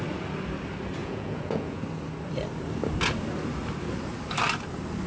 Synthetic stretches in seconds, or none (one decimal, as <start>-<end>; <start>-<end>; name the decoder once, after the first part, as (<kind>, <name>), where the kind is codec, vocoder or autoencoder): 1.0-1.8 (vocoder, Vocos)